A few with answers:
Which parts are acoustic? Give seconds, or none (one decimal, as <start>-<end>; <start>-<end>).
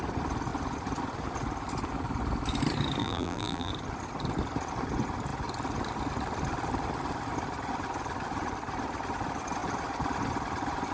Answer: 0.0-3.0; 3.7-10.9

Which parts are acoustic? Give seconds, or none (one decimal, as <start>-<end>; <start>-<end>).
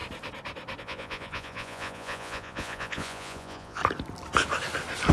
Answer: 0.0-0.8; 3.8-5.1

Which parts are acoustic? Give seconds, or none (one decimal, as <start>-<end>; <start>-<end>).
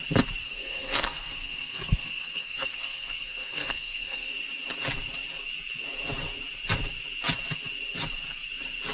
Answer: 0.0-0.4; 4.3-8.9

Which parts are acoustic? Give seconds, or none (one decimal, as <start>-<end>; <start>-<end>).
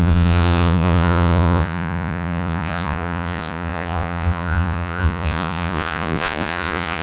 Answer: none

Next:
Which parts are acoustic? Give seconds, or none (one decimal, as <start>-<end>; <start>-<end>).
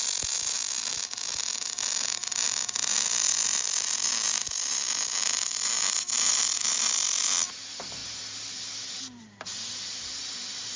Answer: 0.0-10.8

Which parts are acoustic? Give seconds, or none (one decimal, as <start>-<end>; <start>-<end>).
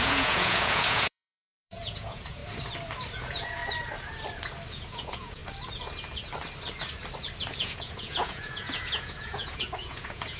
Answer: 2.4-3.1; 3.6-4.7; 5.4-7.5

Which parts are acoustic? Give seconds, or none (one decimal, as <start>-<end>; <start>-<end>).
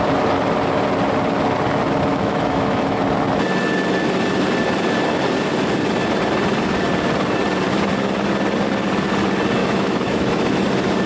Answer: 0.0-2.1; 3.0-9.6; 10.4-11.1